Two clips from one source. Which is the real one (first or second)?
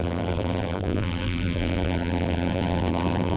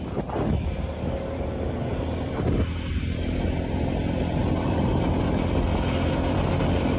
second